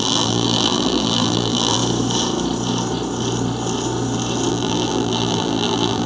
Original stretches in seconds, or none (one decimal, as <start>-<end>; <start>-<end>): 1.8-4.5

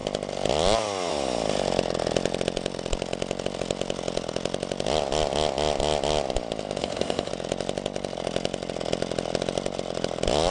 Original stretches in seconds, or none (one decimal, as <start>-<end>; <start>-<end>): 0.0-6.8; 7.3-10.5

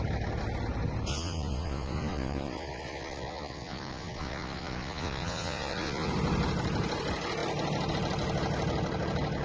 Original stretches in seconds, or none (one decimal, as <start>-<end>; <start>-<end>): 0.0-1.1; 6.1-9.4

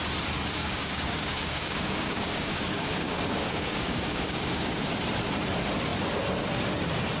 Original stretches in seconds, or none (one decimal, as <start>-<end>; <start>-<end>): 0.0-0.6; 4.9-7.2

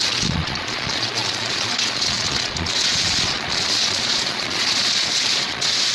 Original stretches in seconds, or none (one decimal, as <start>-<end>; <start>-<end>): none